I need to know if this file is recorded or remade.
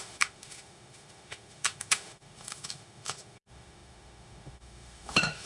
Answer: remade